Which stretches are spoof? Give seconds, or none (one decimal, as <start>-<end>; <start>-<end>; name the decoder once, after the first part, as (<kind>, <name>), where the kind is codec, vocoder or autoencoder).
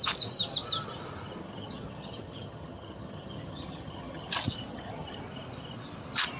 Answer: 1.4-4.3 (vocoder, HiFi-GAN); 4.7-5.2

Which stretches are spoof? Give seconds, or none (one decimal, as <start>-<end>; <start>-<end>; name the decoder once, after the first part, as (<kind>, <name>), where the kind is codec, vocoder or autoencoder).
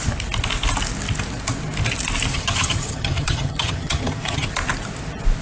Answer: 2.3-4.5 (vocoder, HiFi-GAN)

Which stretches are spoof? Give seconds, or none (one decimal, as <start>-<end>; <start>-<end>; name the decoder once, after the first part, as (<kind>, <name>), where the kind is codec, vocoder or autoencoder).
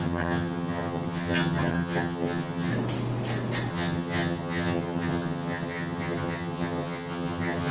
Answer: 0.0-2.7 (vocoder, HiFi-GAN); 3.7-7.7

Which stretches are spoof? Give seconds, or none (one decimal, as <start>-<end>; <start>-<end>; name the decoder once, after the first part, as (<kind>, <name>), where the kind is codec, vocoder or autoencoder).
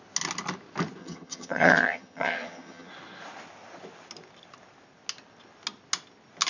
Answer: 1.0-2.9 (vocoder, HiFi-GAN)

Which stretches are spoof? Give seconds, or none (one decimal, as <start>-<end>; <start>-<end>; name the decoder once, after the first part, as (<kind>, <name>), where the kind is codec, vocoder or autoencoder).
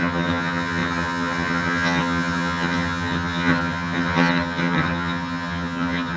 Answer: 0.0-6.2 (vocoder, HiFi-GAN)